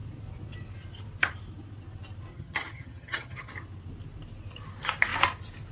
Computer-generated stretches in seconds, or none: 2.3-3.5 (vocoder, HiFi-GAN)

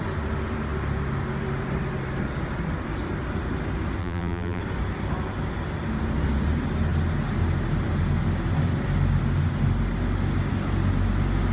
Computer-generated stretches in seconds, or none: 4.0-4.6 (vocoder, BigVGAN v2)

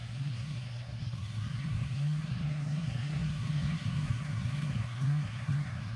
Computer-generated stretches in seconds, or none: 0.0-6.0 (codec, SNAC)

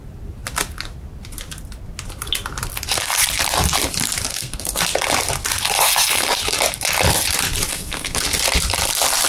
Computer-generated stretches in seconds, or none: 4.3-4.8 (codec, SNAC); 7.7-8.2

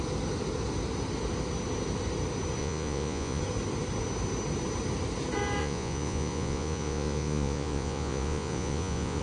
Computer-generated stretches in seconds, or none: 2.6-3.4 (vocoder, Vocos); 5.6-9.2

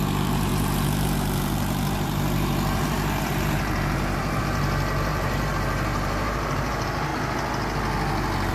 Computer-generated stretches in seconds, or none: 0.0-7.1 (vocoder, BigVGAN v2)

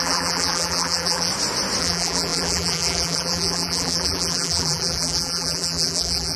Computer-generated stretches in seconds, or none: 0.0-1.3 (vocoder, BigVGAN v2); 1.8-6.4

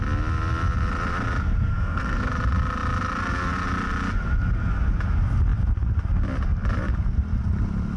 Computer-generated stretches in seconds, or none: 1.7-2.3 (codec, SNAC)